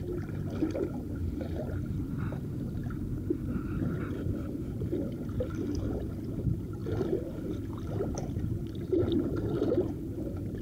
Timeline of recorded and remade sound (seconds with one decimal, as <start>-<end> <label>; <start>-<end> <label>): 0.0-10.6 remade